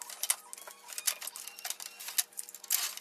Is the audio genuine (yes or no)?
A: yes